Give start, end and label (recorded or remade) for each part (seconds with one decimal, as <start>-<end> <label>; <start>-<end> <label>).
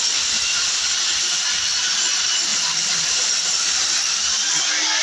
0.0-5.0 recorded